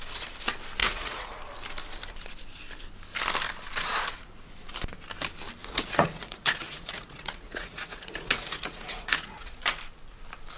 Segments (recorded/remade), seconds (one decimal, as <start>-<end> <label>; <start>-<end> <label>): 0.0-0.8 recorded; 0.8-1.4 remade; 1.4-5.6 recorded; 5.6-9.6 remade; 9.6-10.6 recorded